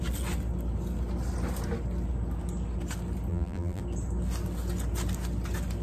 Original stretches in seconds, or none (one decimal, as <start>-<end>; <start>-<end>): 0.0-3.3; 3.8-5.8